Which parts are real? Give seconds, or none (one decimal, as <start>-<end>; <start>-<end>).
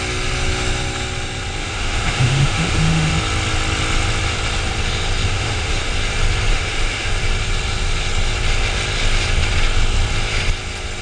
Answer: 0.0-1.6; 3.1-5.3; 5.9-6.5; 7.1-11.0